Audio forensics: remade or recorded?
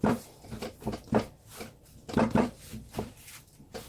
recorded